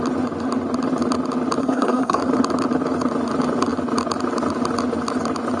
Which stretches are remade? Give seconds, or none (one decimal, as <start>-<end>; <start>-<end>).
1.6-2.2